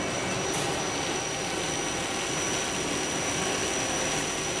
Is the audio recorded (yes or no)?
yes